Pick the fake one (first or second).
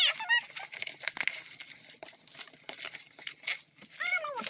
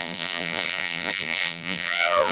second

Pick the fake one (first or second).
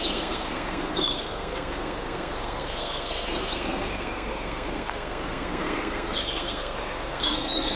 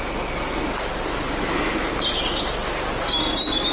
first